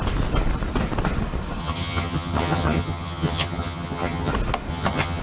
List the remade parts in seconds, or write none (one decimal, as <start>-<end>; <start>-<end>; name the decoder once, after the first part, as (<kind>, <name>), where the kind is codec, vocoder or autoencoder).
1.6-4.3 (vocoder, HiFi-GAN); 4.7-5.2